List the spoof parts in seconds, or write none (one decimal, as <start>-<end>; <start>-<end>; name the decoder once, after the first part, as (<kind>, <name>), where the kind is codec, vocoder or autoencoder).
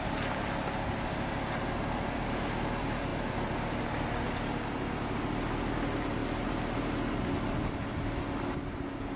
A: 0.0-6.2 (vocoder, BigVGAN v2)